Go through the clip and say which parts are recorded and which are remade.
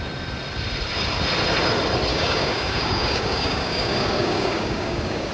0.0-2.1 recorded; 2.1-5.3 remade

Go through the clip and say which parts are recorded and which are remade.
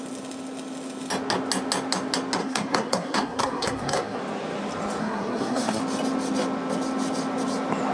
0.0-2.4 recorded; 2.4-4.2 remade; 4.2-5.0 recorded; 5.0-5.8 remade; 5.8-7.9 recorded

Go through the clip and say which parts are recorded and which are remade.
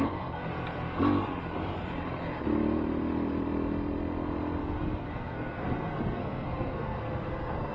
0.0-0.4 remade; 0.4-4.6 recorded; 4.6-7.7 remade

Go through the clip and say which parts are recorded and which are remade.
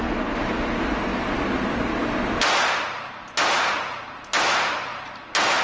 0.0-5.6 recorded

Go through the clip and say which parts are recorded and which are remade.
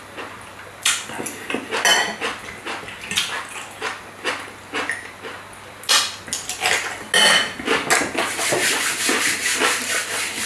0.0-10.5 recorded